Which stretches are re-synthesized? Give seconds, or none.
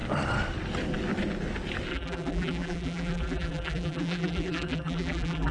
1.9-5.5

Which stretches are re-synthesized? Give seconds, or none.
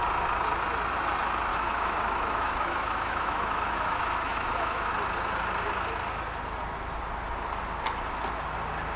1.5-4.9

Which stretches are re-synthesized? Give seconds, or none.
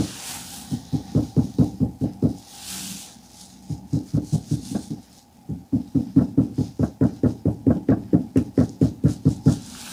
none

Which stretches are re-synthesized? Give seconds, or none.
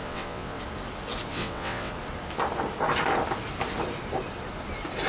0.0-0.6; 1.3-1.9